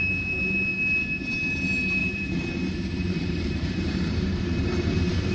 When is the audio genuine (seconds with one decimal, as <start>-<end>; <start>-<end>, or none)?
0.0-2.0